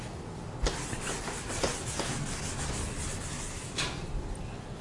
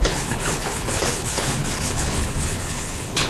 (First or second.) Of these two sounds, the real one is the first